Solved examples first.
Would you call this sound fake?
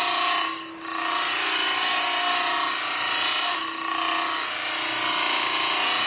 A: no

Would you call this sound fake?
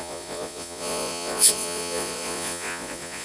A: yes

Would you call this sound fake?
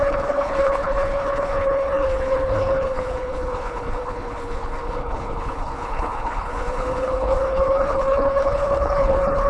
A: yes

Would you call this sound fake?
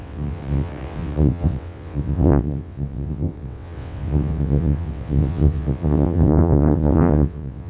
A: yes